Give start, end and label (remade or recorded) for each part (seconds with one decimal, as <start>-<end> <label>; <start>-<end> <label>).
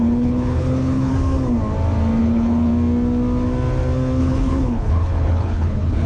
0.0-1.1 remade; 1.1-2.2 recorded; 2.2-2.7 remade; 2.7-4.2 recorded; 4.2-6.1 remade